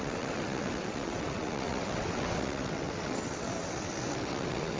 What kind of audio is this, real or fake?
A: fake